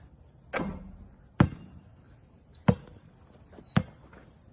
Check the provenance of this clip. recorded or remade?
recorded